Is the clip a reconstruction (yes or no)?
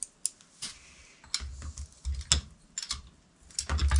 no